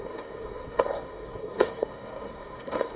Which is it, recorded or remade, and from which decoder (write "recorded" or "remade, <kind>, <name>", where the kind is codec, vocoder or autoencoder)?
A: remade, codec, SNAC